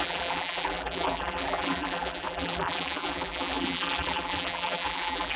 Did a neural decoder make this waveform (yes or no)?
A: yes